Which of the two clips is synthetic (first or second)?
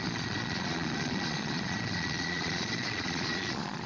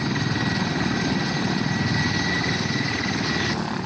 first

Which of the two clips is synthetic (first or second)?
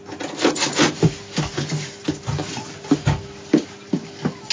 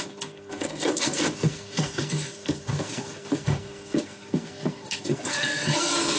second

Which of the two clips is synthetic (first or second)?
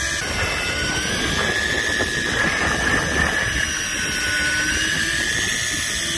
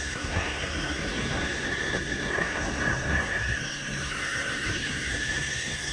second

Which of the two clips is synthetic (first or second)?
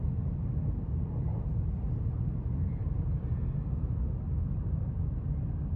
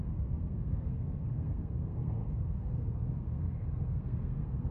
second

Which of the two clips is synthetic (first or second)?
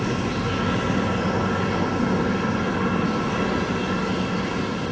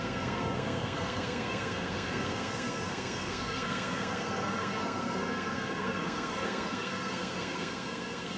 second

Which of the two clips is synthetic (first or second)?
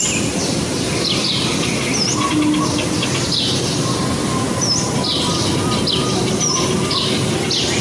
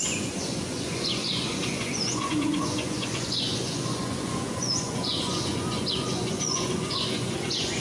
second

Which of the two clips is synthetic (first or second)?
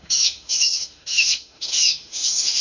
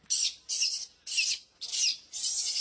first